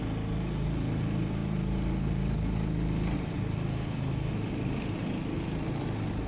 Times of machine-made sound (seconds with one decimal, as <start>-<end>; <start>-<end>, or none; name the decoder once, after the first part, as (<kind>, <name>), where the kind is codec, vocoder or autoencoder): none